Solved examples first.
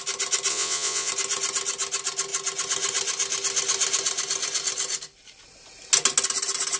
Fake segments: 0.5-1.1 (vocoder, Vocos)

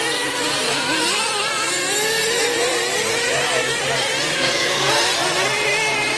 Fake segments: 4.3-4.9 (codec, SNAC)

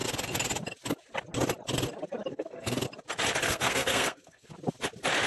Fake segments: 2.3-2.8 (codec, SNAC); 3.4-4.5

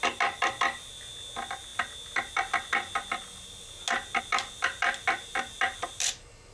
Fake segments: none

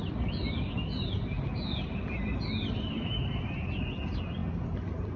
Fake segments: none

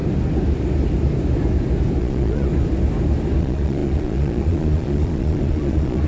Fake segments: 2.0-2.5 (vocoder, Vocos); 3.4-6.1

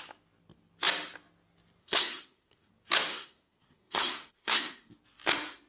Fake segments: 1.8-2.7 (codec, SNAC); 3.1-4.9

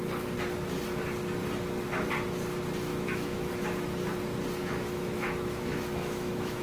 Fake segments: 2.9-3.5 (autoencoder, DAC-VAE); 4.6-6.6